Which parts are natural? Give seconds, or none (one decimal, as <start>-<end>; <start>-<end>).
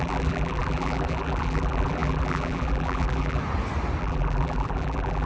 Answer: 3.4-4.0